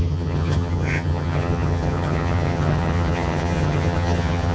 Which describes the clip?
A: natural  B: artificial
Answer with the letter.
B